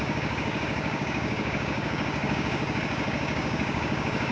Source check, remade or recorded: remade